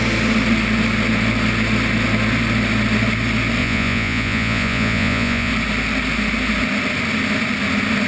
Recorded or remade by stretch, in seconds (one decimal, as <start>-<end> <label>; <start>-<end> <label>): 0.0-3.6 recorded; 3.6-5.5 remade; 5.5-8.1 recorded